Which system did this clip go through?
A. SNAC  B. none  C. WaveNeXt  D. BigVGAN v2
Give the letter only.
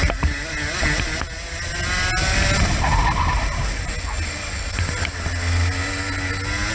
B